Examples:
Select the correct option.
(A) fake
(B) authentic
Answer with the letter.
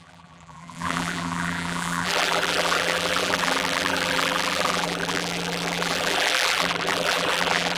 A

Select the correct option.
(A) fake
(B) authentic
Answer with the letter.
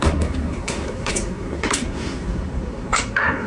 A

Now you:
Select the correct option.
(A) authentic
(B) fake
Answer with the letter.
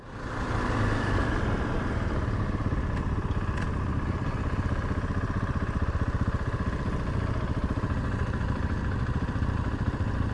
A